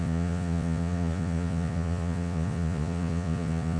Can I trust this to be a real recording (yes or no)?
no